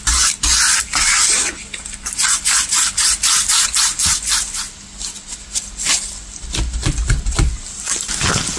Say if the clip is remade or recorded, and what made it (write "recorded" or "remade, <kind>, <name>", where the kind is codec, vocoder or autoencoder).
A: recorded